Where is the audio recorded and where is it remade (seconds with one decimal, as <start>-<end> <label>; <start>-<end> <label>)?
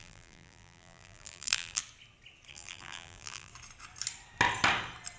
0.0-1.8 remade; 1.8-2.5 recorded; 2.5-3.5 remade; 3.5-5.2 recorded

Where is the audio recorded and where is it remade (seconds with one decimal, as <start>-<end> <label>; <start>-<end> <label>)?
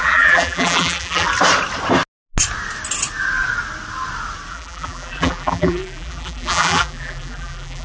0.0-1.3 remade; 1.3-4.5 recorded; 4.5-7.8 remade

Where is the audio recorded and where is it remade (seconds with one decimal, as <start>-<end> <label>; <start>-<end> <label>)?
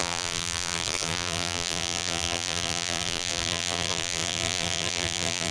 0.0-5.5 remade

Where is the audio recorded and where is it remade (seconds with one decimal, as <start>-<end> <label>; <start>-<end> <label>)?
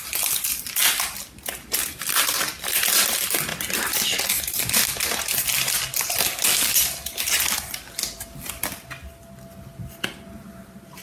0.0-11.0 recorded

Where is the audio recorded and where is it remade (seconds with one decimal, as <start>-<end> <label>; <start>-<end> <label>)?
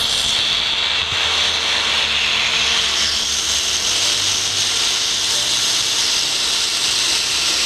0.0-4.6 recorded; 4.6-6.0 remade; 6.0-7.7 recorded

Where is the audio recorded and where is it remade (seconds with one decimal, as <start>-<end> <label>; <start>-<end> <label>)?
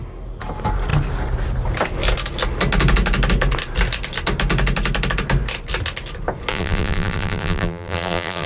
0.0-6.5 recorded; 6.5-8.5 remade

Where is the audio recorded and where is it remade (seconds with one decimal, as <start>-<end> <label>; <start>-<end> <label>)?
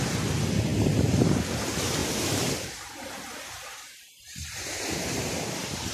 0.0-5.9 remade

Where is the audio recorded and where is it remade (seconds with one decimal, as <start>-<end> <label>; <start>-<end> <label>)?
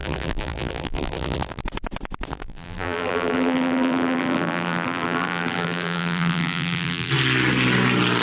0.0-1.6 remade; 1.6-2.3 recorded; 2.3-7.1 remade; 7.1-8.2 recorded